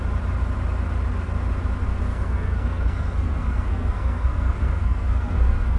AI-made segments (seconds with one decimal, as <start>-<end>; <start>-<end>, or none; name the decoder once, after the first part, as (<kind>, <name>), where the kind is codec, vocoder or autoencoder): 2.1-5.8 (codec, SNAC)